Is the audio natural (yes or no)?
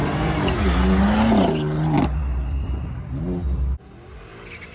yes